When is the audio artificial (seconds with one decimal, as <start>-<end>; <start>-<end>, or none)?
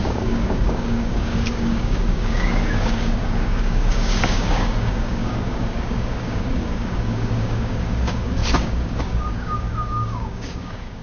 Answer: 0.0-11.0